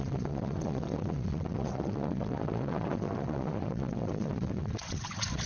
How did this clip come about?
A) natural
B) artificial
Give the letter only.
B